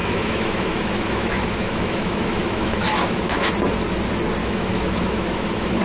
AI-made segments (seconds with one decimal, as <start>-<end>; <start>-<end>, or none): 0.0-3.5; 4.4-5.8